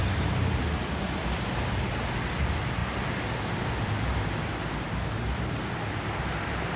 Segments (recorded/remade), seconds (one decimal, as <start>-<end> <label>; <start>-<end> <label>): 0.0-6.8 recorded